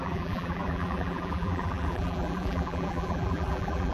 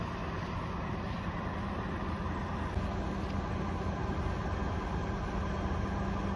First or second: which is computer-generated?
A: first